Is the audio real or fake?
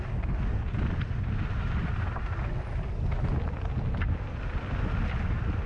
real